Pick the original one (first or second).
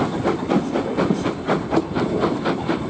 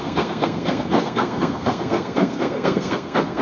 first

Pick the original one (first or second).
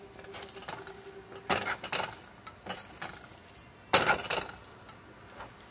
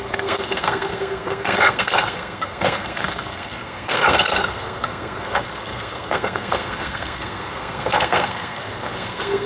first